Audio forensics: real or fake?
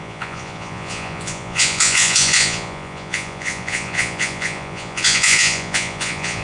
fake